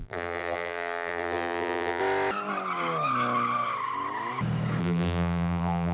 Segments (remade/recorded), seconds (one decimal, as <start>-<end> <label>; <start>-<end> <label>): 0.0-2.0 remade; 2.0-4.8 recorded; 4.8-5.9 remade